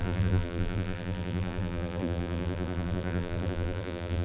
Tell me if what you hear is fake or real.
fake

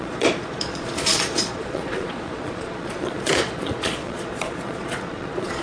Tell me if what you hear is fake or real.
fake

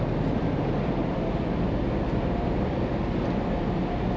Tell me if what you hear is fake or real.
fake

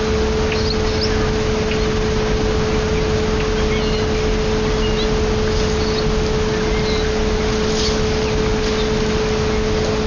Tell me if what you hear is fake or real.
real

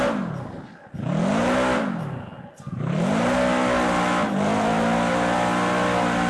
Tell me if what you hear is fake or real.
real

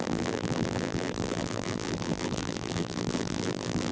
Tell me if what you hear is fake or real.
fake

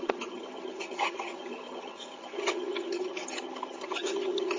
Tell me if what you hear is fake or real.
fake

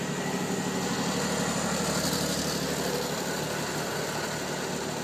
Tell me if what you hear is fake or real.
real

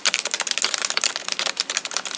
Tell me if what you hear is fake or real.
real